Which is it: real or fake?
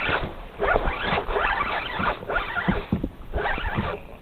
fake